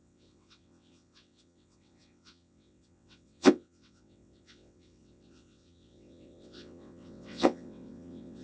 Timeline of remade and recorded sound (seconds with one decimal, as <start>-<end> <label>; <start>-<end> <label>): 0.0-8.4 remade